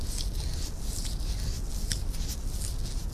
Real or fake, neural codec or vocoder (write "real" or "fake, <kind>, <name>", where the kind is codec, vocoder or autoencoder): real